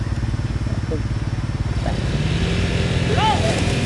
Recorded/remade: recorded